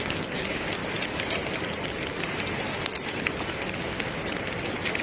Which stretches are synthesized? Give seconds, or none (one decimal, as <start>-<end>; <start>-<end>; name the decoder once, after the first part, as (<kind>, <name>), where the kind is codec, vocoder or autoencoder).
0.0-0.8 (codec, DAC); 3.8-4.2